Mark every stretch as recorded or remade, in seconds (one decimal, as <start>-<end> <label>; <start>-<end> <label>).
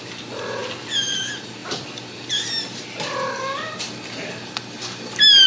0.0-5.5 recorded